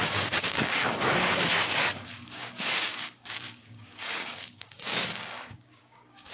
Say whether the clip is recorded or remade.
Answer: remade